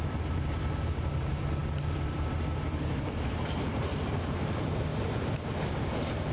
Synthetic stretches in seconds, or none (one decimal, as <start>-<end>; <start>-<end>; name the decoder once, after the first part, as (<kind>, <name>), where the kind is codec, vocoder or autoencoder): 0.0-4.9 (vocoder, BigVGAN v2); 5.7-6.3